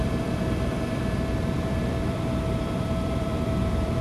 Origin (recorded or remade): remade